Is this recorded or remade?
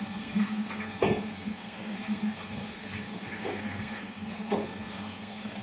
remade